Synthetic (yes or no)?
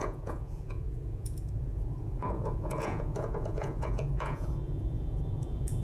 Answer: yes